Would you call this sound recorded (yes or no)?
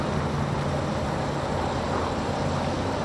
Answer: yes